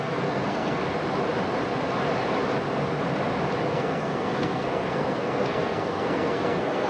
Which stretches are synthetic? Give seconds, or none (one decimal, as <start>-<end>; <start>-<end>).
0.0-0.8; 3.7-6.9